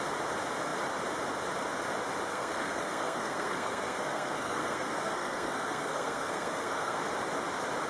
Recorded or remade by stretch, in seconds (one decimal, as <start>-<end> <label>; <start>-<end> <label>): 0.0-2.3 recorded; 2.3-7.0 remade; 7.0-7.9 recorded